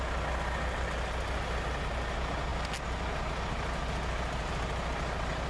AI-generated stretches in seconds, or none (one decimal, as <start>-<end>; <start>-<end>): none

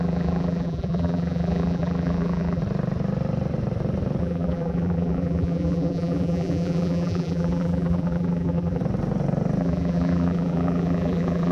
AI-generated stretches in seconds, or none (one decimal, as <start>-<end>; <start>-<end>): 0.0-2.6; 4.2-8.8; 9.6-11.5

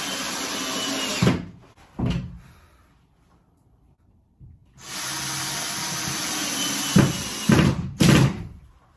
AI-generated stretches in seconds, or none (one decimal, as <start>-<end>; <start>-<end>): 0.0-1.1; 2.2-9.0

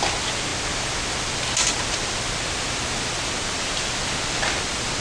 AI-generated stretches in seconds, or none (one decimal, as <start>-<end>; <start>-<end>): none

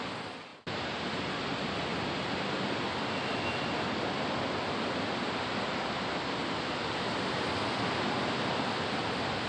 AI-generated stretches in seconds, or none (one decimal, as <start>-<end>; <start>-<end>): 0.5-1.2; 1.9-2.7

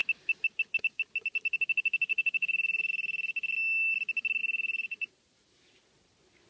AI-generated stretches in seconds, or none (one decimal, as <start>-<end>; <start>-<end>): 2.1-2.9; 4.4-5.2

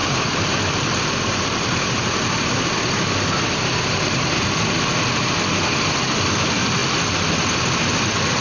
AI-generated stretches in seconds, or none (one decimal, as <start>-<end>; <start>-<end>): 0.0-4.2

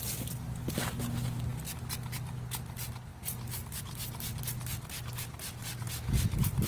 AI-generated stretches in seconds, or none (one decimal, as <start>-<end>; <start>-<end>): none